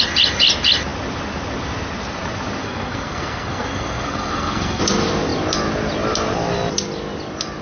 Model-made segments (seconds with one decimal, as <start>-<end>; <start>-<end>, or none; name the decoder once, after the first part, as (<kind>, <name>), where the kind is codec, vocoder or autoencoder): 2.6-4.8 (codec, SNAC)